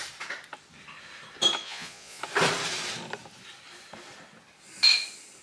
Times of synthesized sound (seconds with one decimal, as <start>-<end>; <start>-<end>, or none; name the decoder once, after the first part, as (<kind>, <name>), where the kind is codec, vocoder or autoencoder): 1.6-2.2 (vocoder, Vocos)